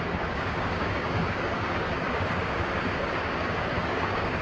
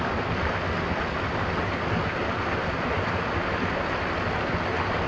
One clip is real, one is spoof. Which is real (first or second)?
second